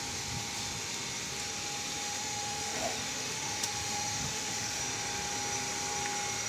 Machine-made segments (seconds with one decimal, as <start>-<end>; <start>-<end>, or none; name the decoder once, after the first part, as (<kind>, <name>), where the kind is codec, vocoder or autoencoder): 2.0-4.8 (autoencoder, DAC-VAE)